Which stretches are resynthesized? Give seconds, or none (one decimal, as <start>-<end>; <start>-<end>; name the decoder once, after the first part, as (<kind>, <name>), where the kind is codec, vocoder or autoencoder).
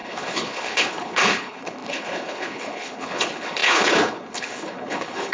0.0-5.3 (codec, HILCodec)